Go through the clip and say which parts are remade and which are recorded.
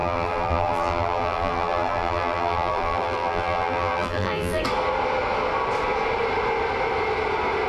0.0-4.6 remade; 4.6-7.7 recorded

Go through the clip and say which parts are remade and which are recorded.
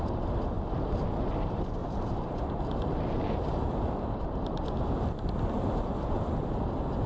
0.0-1.8 recorded; 1.8-4.7 remade; 4.7-7.1 recorded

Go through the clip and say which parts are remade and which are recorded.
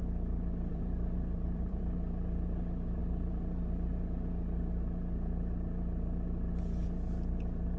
0.0-0.7 recorded; 0.7-1.8 remade; 1.8-7.8 recorded